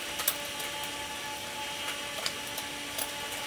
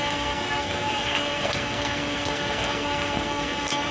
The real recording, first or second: first